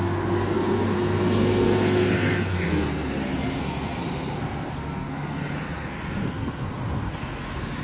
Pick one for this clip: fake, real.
fake